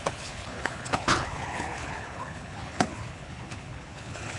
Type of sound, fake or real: fake